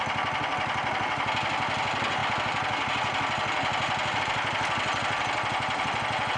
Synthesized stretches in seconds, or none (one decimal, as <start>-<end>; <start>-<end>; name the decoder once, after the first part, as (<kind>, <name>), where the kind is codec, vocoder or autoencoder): none